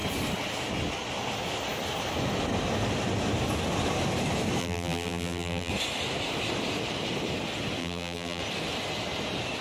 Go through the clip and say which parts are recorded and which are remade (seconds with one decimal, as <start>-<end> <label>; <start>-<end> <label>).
0.0-4.6 recorded; 4.6-5.7 remade; 5.7-7.8 recorded; 7.8-8.4 remade; 8.4-9.6 recorded